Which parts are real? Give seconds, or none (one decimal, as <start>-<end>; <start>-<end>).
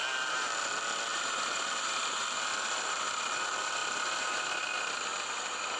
0.6-1.1; 3.0-5.8